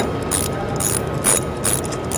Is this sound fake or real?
real